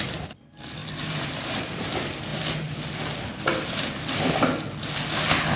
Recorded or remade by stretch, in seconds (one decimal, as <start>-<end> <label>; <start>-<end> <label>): 0.0-5.6 recorded